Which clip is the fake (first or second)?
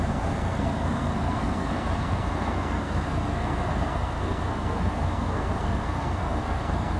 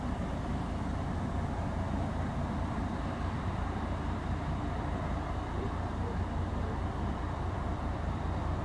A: first